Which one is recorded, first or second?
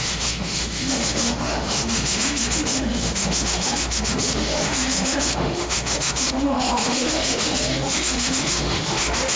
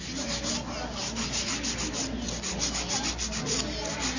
second